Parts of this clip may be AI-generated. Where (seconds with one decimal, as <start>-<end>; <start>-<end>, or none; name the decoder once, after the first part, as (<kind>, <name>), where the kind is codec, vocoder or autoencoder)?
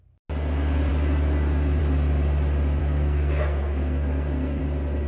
2.8-4.6 (codec, SNAC)